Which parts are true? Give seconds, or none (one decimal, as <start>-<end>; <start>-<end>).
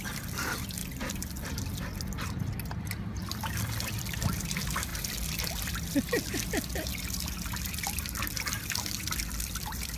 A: 0.8-1.5; 4.9-8.2